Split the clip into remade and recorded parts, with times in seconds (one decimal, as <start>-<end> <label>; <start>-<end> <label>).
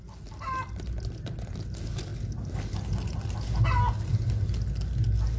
0.0-5.4 recorded